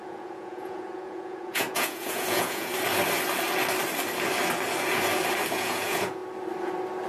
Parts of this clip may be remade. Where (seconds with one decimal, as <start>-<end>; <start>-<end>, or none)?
0.0-2.7; 5.5-6.2